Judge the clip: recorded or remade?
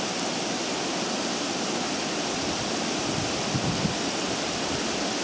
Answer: recorded